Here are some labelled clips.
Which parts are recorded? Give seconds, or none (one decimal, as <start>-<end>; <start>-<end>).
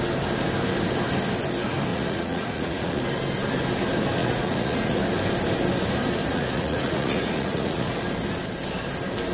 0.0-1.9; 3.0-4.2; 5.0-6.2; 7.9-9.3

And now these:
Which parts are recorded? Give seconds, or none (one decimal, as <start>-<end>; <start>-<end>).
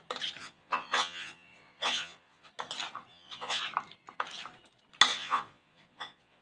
0.0-0.4; 2.5-3.1; 3.6-5.1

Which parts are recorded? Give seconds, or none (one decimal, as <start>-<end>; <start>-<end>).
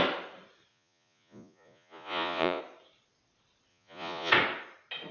0.0-0.7; 2.6-3.7; 4.3-5.1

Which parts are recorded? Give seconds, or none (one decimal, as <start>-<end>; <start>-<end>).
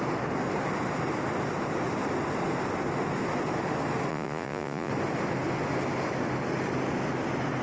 0.0-4.1; 4.9-7.6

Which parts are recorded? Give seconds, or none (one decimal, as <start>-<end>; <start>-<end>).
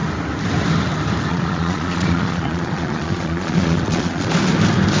0.0-1.3; 4.3-5.0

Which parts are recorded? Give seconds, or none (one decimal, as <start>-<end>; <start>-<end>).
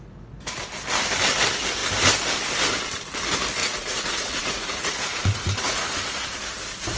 0.0-3.6; 6.4-7.0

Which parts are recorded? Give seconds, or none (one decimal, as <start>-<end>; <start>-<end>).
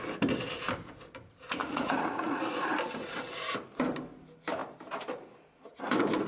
0.0-1.6; 2.4-6.3